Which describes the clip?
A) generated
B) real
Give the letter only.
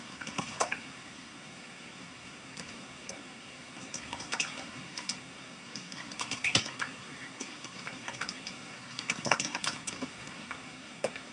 A